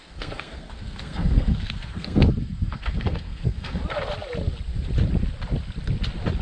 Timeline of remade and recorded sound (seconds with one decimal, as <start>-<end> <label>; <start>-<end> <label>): 0.0-3.8 remade; 3.8-6.4 recorded